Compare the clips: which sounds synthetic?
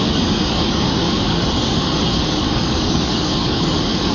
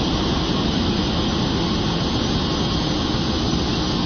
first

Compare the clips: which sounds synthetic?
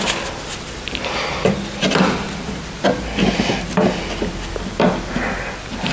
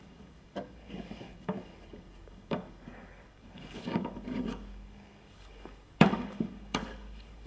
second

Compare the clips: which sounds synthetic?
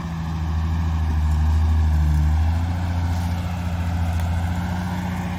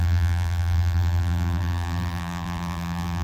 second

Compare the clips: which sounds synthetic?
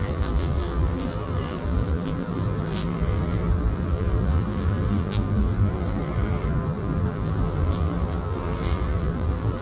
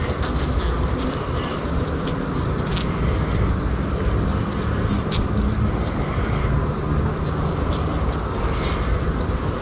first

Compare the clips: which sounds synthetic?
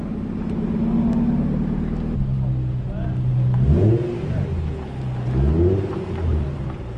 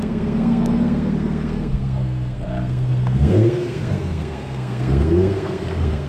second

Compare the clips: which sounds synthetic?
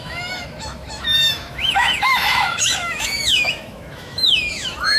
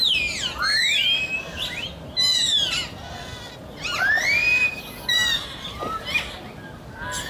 first